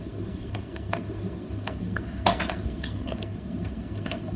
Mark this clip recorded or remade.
remade